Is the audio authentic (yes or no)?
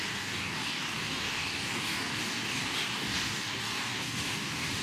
no